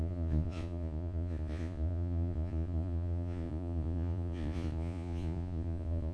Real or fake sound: fake